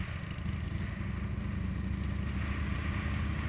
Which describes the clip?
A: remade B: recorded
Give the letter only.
B